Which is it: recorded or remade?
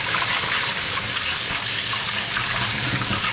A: remade